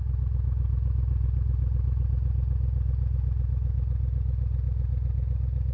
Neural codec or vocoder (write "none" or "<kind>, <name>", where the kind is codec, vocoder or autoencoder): none